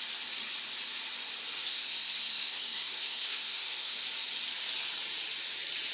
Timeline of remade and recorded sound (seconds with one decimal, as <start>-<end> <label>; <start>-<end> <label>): 0.0-1.7 recorded; 1.7-3.9 remade; 3.9-5.9 recorded